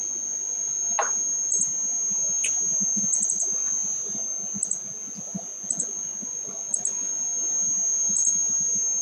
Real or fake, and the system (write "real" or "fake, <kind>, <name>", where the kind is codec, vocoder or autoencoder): real